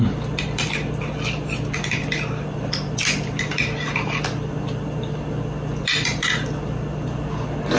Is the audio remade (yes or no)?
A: no